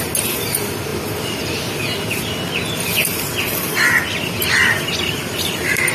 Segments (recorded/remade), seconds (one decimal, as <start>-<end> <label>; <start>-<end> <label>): 0.0-5.9 recorded